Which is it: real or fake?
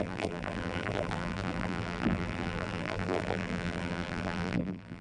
fake